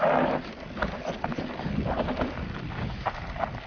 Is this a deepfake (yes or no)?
no